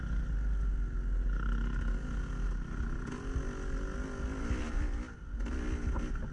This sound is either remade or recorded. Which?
recorded